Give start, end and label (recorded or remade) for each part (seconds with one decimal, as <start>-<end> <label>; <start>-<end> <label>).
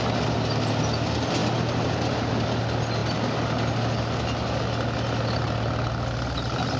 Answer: 0.0-6.8 recorded